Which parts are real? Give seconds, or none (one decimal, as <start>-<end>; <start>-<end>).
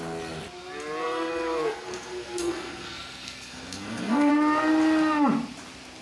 0.0-1.0; 4.3-6.0